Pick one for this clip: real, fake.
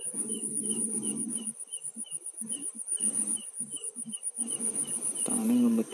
fake